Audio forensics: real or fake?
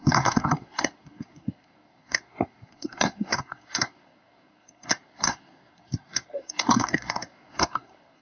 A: fake